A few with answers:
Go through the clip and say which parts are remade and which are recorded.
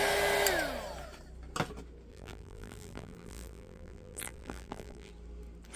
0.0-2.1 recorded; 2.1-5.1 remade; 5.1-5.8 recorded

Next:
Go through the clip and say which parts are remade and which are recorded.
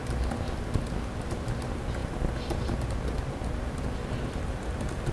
0.0-5.1 recorded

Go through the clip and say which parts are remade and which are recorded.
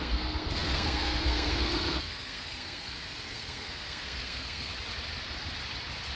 0.0-4.7 remade; 4.7-6.2 recorded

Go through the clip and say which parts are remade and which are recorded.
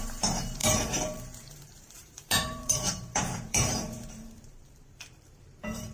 0.0-5.9 remade